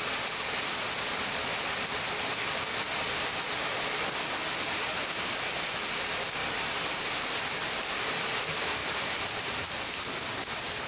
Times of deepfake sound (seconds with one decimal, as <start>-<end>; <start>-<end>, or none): 8.8-10.3

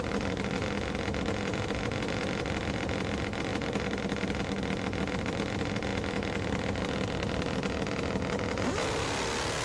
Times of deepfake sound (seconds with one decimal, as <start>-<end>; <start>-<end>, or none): 3.5-4.4

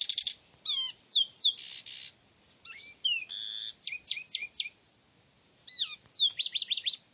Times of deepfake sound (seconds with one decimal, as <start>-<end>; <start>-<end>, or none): none